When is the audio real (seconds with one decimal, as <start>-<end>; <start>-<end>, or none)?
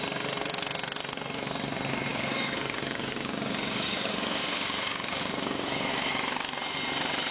0.0-2.1; 6.4-7.3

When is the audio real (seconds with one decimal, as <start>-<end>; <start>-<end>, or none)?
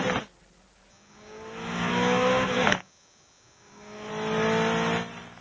0.0-0.9; 4.1-5.4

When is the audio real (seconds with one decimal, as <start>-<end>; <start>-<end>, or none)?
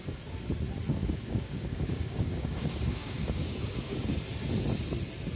0.0-1.0; 4.1-5.4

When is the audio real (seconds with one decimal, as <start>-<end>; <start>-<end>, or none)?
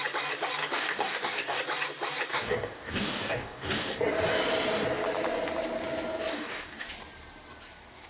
0.0-0.6; 1.6-2.3; 4.0-6.3; 6.9-8.1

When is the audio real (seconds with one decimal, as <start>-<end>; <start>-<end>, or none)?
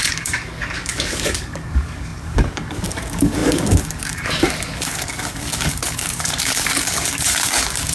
none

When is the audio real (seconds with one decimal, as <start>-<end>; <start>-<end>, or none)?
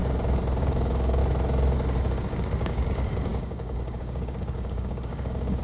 0.0-0.6; 1.2-2.0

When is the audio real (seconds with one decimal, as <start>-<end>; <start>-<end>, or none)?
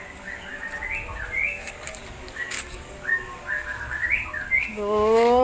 0.5-1.5; 4.0-4.6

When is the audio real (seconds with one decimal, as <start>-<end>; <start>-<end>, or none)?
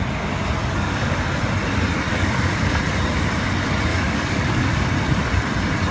0.0-0.6; 1.3-2.1; 2.8-3.9; 4.7-5.9